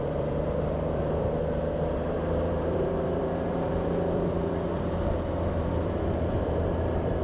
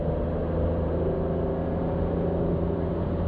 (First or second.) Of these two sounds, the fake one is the first